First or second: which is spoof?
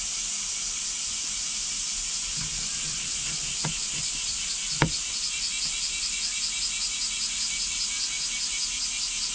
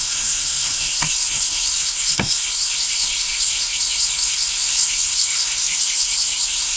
second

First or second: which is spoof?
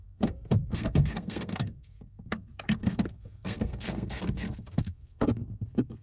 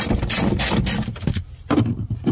first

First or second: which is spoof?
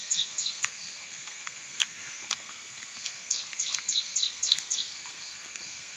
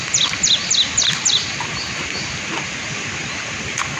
first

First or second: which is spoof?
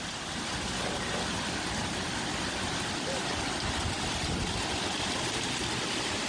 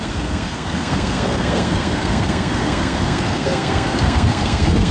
second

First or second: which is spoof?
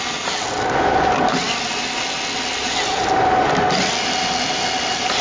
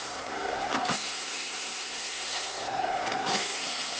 second